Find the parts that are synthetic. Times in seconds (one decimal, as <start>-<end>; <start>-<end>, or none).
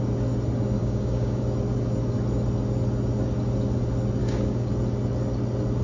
0.8-1.4; 4.2-4.7